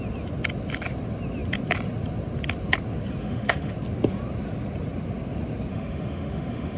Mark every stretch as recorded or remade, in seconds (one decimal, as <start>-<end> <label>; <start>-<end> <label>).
0.0-3.2 recorded; 3.2-3.7 remade; 3.7-5.7 recorded; 5.7-6.8 remade